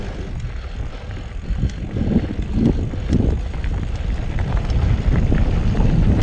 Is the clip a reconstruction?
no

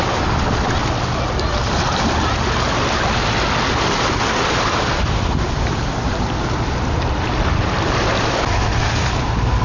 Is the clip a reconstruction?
no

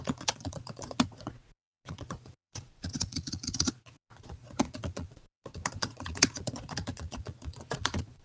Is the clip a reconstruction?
yes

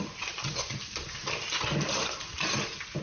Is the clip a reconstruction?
no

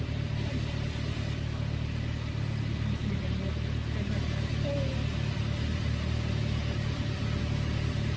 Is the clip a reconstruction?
no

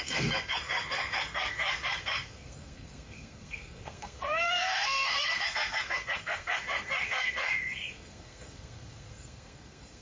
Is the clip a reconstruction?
yes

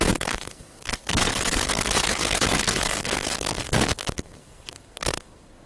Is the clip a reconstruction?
yes